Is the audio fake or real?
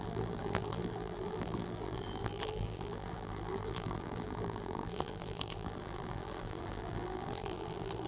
fake